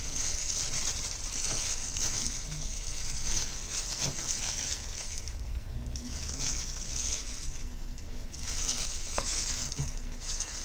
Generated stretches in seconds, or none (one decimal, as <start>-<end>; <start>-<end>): 0.0-0.6; 1.3-10.6